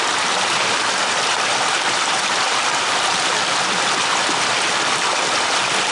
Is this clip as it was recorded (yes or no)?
no